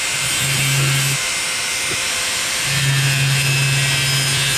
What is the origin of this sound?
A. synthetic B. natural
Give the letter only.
B